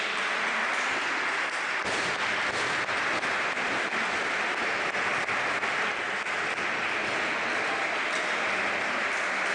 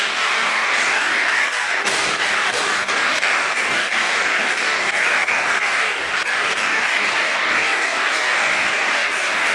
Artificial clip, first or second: second